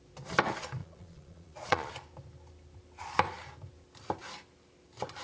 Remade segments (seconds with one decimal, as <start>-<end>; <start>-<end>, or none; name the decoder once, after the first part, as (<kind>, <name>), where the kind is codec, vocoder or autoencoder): 0.8-1.9 (vocoder, Vocos)